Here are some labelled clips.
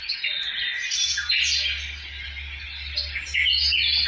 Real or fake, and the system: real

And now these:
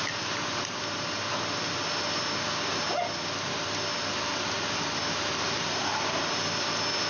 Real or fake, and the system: real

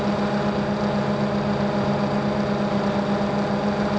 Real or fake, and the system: real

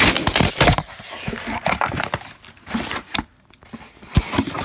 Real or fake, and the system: real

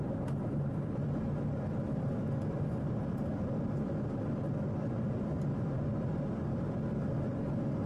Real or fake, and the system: real